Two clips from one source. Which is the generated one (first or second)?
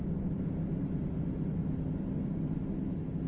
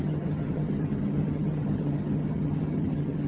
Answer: second